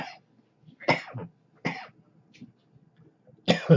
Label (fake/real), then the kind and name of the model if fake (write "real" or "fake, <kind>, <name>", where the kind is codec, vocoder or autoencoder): real